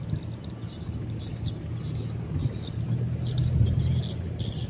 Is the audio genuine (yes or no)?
yes